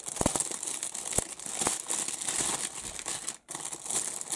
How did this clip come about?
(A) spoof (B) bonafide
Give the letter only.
B